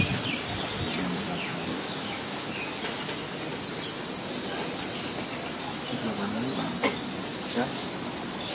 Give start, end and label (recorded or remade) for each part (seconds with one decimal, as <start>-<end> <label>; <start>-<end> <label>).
0.0-1.5 recorded; 1.5-2.5 remade; 2.5-7.3 recorded; 7.3-7.9 remade; 7.9-8.5 recorded